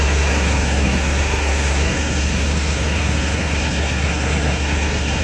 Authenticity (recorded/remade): remade